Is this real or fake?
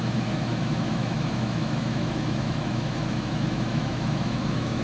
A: fake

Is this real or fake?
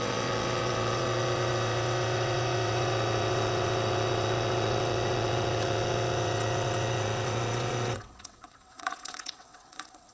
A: fake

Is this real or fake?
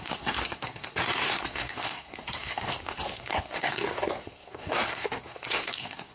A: fake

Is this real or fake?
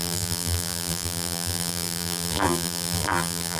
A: fake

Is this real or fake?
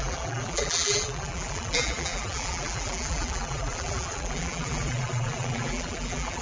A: fake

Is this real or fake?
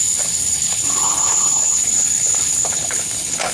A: fake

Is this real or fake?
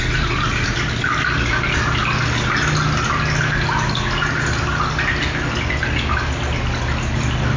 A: real